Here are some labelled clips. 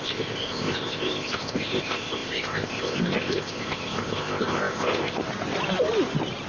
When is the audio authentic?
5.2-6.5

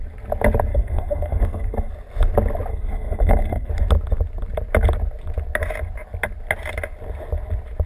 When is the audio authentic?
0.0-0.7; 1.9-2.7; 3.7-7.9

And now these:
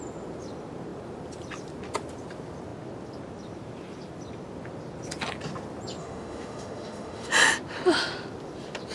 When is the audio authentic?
0.0-6.0; 7.3-8.9

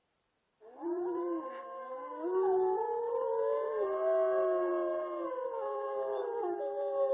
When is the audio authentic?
1.6-5.7; 6.6-7.1

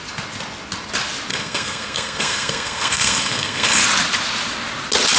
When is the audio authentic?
0.0-1.3; 3.8-5.2

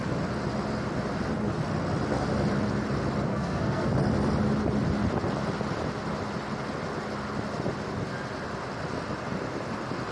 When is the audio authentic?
0.0-3.3; 3.9-10.1

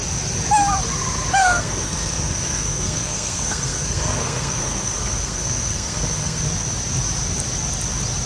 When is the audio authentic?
0.0-1.4; 6.4-8.3

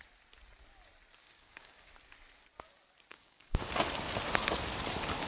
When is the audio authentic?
0.0-1.2; 1.9-3.1; 3.7-5.3